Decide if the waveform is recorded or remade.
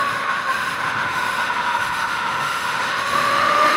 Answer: remade